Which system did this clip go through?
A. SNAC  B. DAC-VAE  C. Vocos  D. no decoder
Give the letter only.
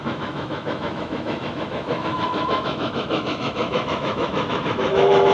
B